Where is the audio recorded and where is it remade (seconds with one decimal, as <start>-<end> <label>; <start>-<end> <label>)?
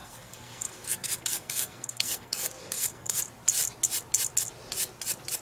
0.0-3.2 remade; 3.2-5.4 recorded